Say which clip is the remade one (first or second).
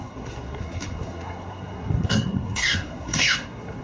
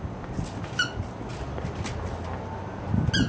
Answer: first